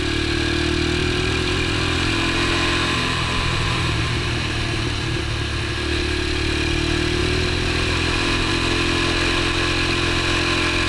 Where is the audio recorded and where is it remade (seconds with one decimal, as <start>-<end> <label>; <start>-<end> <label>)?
0.0-1.0 recorded; 1.0-5.2 remade; 5.2-7.2 recorded; 7.2-8.5 remade; 8.5-10.9 recorded